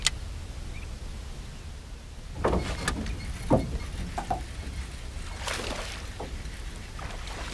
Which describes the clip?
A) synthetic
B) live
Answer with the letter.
B